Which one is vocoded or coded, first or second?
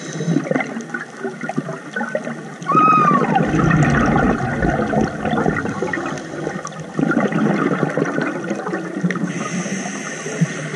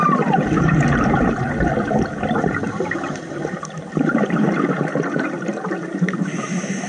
second